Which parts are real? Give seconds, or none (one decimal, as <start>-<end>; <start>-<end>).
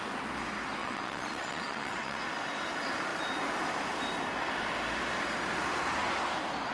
0.0-0.8; 2.2-6.7